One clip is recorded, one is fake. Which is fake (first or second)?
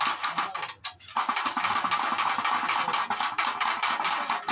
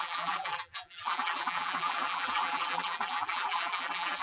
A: second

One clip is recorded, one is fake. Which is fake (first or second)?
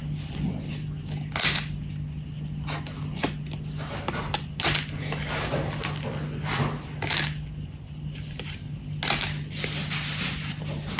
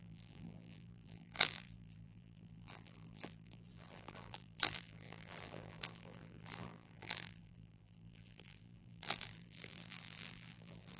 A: second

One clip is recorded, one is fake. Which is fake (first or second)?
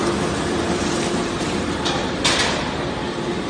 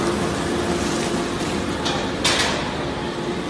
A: first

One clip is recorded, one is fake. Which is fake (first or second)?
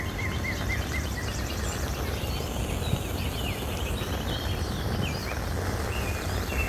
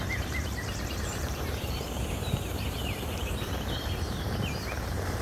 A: second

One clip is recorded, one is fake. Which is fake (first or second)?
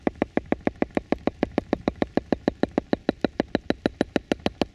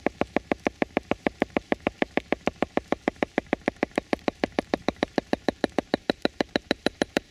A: second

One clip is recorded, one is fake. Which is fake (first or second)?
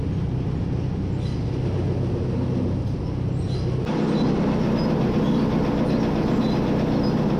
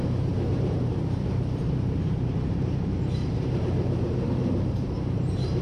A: second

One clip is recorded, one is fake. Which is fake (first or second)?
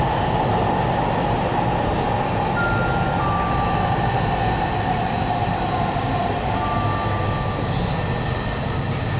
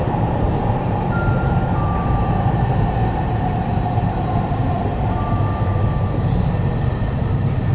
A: second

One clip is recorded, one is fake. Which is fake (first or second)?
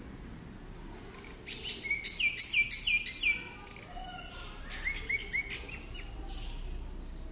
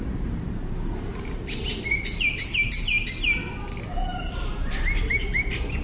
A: second